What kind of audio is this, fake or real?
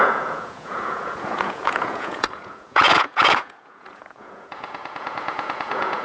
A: fake